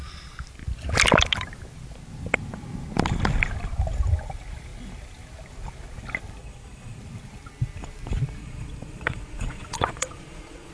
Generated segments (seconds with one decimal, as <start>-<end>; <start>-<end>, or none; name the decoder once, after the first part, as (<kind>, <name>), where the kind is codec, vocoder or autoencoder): 6.4-7.0 (vocoder, Vocos); 8.4-10.7